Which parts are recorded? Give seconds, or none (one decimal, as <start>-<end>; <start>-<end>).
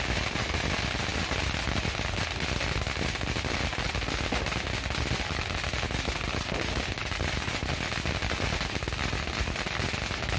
0.0-7.0; 7.7-10.4